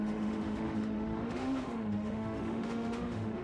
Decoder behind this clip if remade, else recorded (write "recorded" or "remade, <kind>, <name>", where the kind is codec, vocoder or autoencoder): remade, autoencoder, DAC-VAE